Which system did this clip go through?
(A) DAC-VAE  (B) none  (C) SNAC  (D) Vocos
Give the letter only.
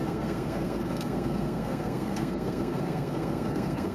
C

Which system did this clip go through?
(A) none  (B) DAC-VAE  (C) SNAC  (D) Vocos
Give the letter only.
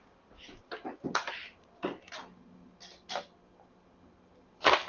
A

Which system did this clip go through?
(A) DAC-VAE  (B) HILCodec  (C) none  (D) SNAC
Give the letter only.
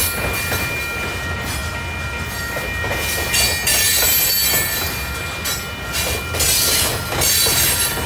C